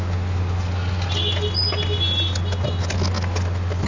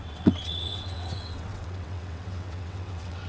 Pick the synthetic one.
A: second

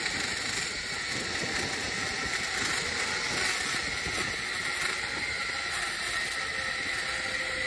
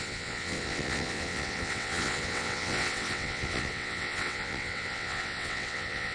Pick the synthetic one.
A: second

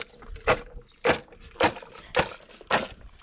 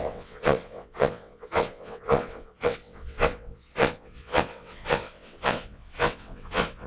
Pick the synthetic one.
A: second